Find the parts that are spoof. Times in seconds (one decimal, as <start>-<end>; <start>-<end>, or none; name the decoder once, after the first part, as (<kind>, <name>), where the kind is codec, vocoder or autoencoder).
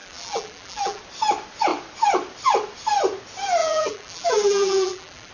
0.0-1.0 (vocoder, BigVGAN v2); 3.6-5.3